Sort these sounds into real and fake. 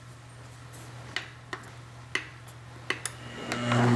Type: real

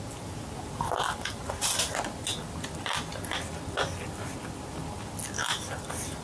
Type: real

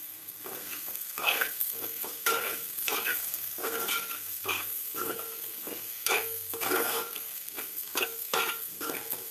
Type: fake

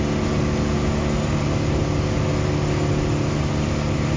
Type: real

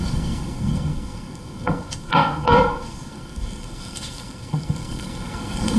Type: fake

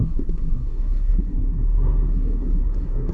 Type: fake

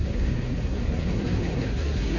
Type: fake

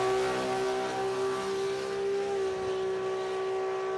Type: real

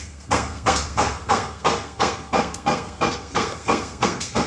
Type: fake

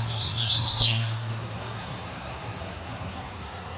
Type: fake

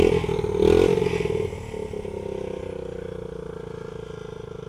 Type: real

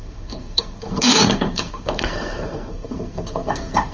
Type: fake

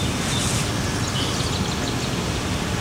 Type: real